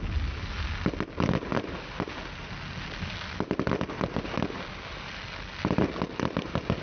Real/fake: real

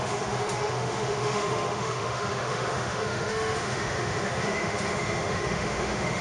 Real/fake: fake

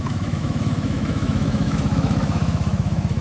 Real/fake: fake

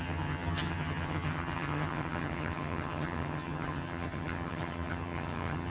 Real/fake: fake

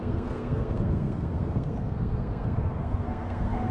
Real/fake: fake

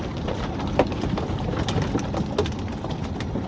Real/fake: real